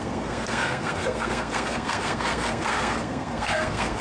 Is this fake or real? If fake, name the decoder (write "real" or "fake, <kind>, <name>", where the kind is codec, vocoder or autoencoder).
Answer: fake, codec, SNAC